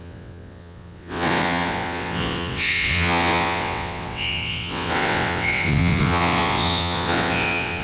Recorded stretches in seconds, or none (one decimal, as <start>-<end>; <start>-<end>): none